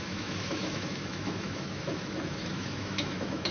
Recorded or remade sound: remade